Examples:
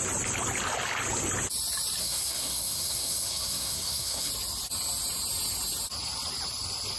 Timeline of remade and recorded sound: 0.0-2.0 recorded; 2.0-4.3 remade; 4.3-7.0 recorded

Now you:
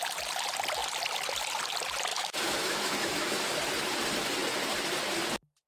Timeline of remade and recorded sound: 0.0-2.1 recorded; 2.1-3.6 remade; 3.6-5.7 recorded

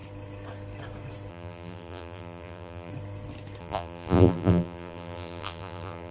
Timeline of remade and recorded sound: 0.0-1.3 recorded; 1.3-2.9 remade; 2.9-3.6 recorded; 3.6-6.1 remade

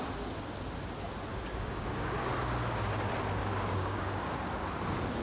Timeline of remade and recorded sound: 0.0-1.3 recorded; 1.3-2.3 remade; 2.3-3.4 recorded; 3.4-4.1 remade; 4.1-5.2 recorded

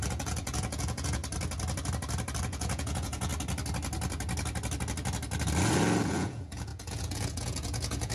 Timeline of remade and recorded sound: 0.0-1.2 remade; 1.2-2.4 recorded; 2.4-3.3 remade; 3.3-6.1 recorded; 6.1-8.1 remade

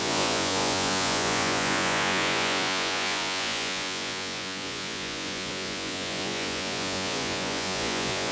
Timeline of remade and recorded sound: 0.0-8.3 remade

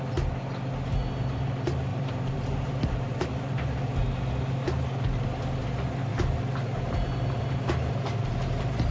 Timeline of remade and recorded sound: 0.0-1.9 recorded; 1.9-4.3 remade; 4.3-8.9 recorded